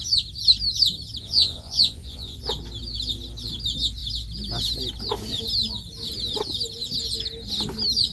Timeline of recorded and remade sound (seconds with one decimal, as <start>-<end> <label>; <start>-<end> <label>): 0.0-1.2 recorded; 1.2-2.4 remade; 2.4-8.1 recorded